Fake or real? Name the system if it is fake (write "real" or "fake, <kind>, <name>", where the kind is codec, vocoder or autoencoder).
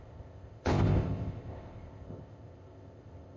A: fake, codec, ZipCodec